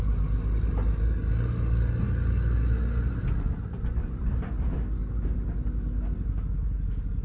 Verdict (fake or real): real